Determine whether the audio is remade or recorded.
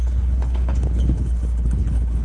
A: remade